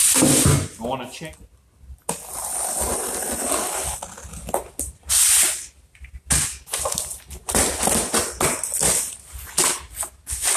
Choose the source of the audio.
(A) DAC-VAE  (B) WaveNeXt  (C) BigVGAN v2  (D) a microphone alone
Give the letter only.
D